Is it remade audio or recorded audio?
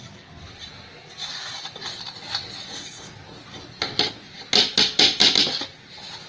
recorded